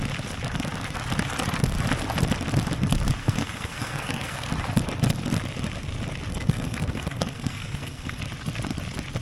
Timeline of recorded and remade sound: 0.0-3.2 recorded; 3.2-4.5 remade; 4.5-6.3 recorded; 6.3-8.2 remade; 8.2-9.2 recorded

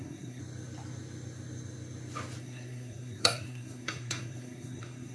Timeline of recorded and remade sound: 0.0-0.4 remade; 0.4-2.4 recorded; 2.4-5.1 remade

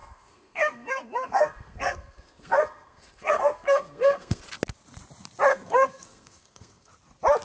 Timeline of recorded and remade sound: 0.0-4.4 remade; 4.4-5.5 recorded; 5.5-6.9 remade; 6.9-7.4 recorded

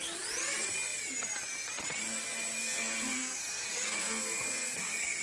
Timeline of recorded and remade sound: 0.0-2.6 recorded; 2.6-5.2 remade

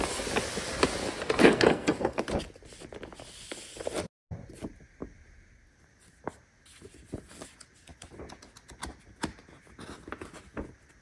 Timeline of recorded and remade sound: 0.0-1.4 recorded; 1.4-2.2 remade; 2.2-11.0 recorded

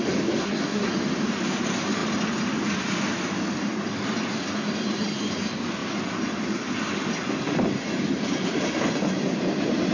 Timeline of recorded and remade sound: 0.0-0.4 recorded; 0.4-0.9 remade; 0.9-9.9 recorded

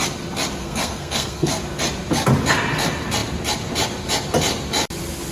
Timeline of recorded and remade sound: 0.0-0.6 recorded; 0.6-1.6 remade; 1.6-5.3 recorded

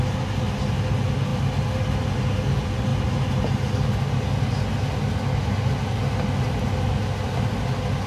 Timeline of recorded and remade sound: 0.0-8.1 recorded